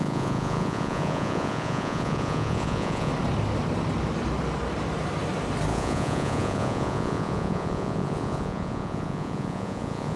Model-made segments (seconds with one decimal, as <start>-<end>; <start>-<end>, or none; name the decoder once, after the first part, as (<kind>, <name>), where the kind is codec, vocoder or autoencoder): 0.0-3.1 (vocoder, Vocos); 5.7-10.2